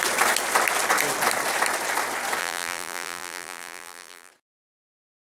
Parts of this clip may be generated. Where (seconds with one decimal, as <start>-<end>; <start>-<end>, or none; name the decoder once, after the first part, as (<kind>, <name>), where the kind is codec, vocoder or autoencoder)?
2.4-4.3 (vocoder, BigVGAN v2)